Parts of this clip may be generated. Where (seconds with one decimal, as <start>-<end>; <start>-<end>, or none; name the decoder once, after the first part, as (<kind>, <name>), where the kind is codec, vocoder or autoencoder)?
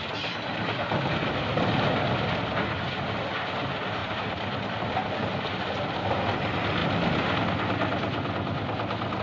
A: 4.0-4.9 (vocoder, BigVGAN v2)